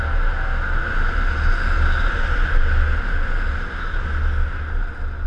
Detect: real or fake real